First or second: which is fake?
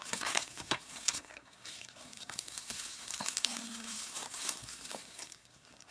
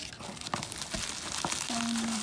first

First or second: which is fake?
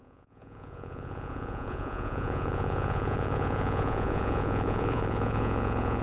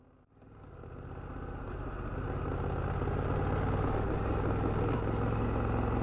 first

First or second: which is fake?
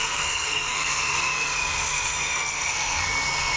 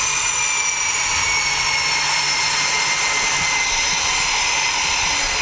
first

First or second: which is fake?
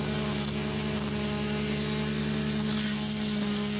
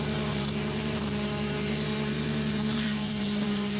second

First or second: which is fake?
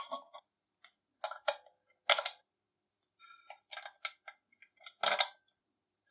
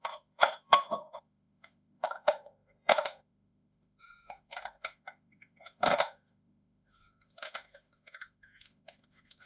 second